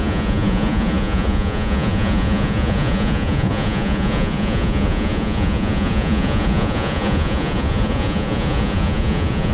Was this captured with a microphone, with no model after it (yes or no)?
no